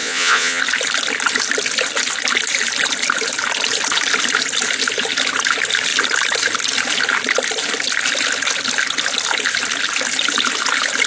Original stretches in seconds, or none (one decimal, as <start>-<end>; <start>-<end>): 0.6-11.1